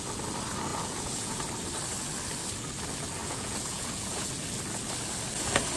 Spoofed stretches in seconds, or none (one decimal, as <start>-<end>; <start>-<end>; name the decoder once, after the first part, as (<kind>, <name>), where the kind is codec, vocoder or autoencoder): 0.7-1.4 (vocoder, Vocos); 3.2-4.3